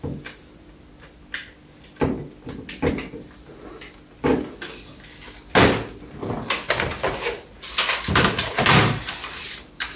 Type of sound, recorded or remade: recorded